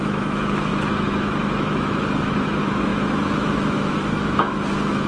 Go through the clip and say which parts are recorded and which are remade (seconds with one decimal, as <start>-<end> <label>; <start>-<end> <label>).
0.0-5.1 remade